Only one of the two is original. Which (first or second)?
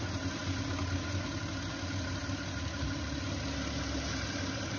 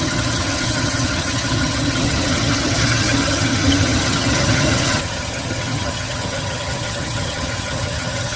first